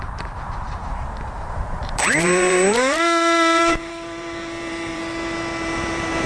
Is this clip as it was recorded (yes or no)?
no